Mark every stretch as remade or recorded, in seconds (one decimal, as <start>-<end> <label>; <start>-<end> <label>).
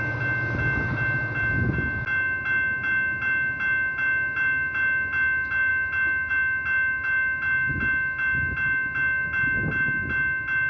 0.0-10.7 recorded